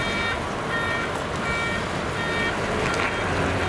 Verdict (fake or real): real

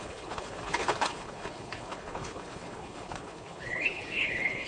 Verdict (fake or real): fake